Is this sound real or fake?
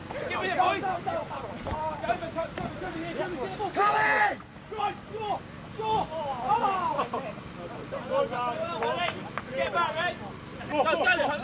real